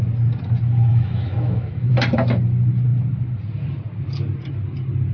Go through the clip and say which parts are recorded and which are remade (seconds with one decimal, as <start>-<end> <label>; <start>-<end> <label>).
0.0-0.9 recorded; 0.9-1.9 remade; 1.9-5.1 recorded